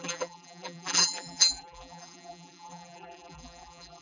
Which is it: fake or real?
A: fake